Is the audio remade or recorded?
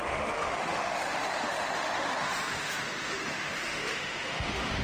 remade